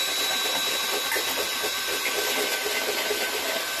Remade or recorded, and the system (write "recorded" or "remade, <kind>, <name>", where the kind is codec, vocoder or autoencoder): recorded